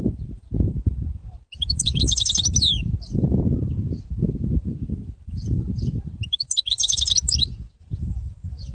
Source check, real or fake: fake